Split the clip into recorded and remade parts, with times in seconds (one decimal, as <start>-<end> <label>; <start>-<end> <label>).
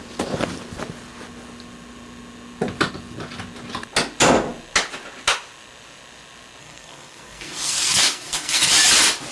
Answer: 0.0-6.6 recorded; 6.6-8.7 remade; 8.7-9.3 recorded